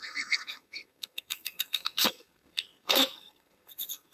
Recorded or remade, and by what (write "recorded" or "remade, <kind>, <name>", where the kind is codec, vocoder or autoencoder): remade, codec, SNAC